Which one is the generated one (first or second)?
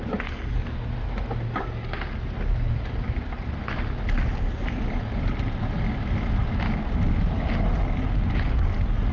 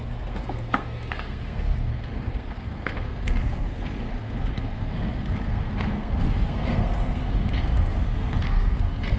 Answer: second